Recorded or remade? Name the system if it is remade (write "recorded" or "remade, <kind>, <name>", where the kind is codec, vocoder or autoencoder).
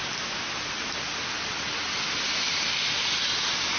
recorded